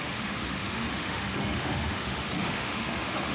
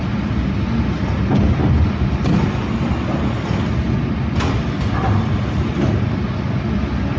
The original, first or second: second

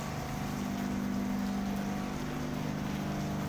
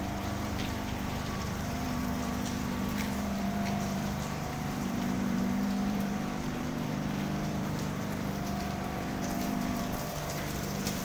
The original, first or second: first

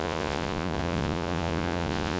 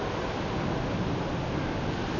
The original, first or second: second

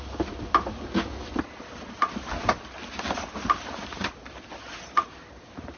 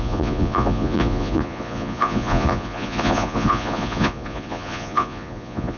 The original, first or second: first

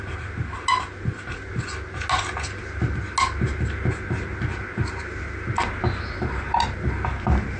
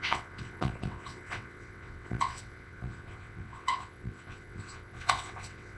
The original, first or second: first